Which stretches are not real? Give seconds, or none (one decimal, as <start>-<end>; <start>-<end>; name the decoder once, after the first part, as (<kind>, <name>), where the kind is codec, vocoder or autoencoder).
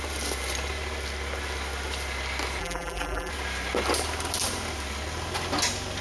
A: 2.6-3.3 (vocoder, BigVGAN v2)